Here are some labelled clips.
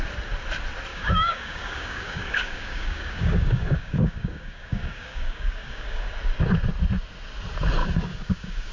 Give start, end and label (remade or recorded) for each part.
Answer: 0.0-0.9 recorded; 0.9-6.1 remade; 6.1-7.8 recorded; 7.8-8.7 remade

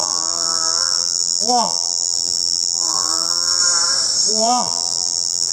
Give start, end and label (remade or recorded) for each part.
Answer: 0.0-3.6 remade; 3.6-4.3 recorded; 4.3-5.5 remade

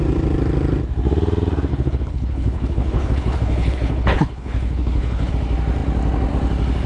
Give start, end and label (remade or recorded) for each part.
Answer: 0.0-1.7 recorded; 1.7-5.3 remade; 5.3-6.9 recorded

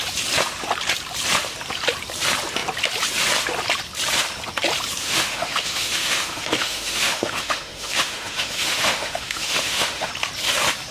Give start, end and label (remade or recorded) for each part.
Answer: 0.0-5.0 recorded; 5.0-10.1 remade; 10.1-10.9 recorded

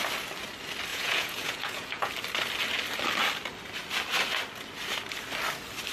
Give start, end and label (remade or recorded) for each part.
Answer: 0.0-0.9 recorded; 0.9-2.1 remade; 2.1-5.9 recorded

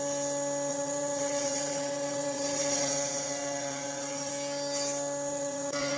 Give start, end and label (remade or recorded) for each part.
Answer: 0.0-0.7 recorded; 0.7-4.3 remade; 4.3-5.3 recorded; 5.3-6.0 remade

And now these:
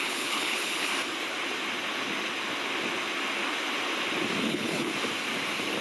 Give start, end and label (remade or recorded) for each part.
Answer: 0.0-0.9 remade; 0.9-4.4 recorded; 4.4-4.9 remade; 4.9-5.8 recorded

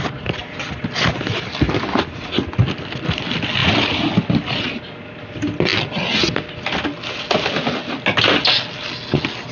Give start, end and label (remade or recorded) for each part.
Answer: 0.0-9.5 recorded